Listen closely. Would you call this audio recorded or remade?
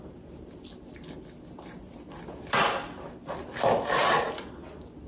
recorded